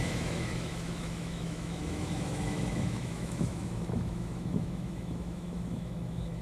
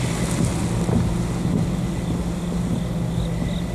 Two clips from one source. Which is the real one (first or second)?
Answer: second